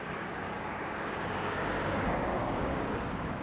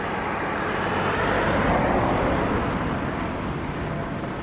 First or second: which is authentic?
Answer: second